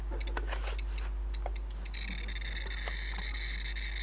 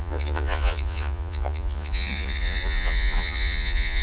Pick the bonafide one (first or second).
first